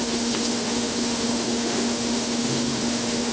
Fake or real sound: fake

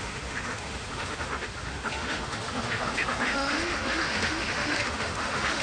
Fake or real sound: fake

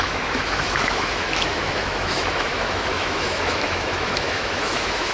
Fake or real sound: fake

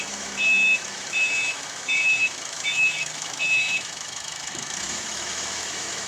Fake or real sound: fake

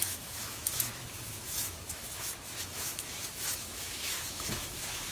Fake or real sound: fake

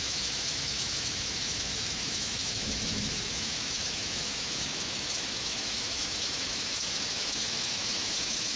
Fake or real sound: fake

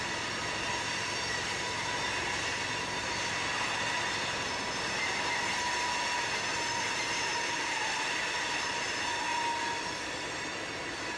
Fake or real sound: real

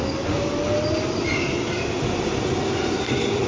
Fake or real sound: real